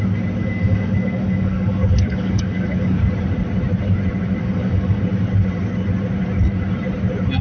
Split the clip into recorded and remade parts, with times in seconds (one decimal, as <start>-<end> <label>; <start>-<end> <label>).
0.0-0.4 recorded; 0.4-3.0 remade; 3.0-4.4 recorded; 4.4-5.0 remade; 5.0-7.4 recorded

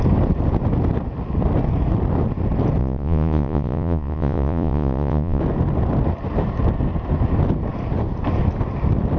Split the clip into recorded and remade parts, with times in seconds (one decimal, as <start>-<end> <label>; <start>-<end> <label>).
0.0-2.8 recorded; 2.8-5.4 remade; 5.4-9.2 recorded

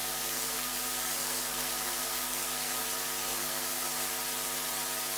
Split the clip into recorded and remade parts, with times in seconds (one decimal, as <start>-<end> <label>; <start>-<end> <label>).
0.0-2.8 remade; 2.8-3.3 recorded; 3.3-4.1 remade; 4.1-5.2 recorded

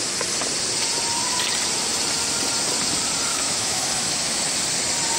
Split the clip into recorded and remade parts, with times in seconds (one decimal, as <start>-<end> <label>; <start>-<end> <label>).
0.0-3.3 recorded; 3.3-4.4 remade; 4.4-5.2 recorded